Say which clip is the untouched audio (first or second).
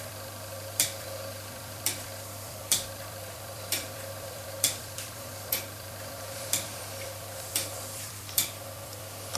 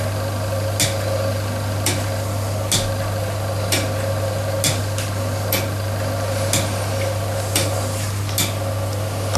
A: second